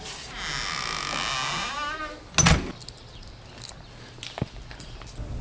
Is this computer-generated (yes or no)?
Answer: no